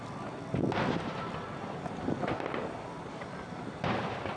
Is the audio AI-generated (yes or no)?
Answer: no